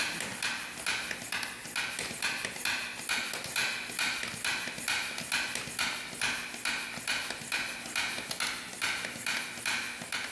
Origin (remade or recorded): recorded